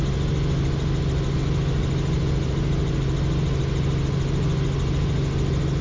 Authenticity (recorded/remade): recorded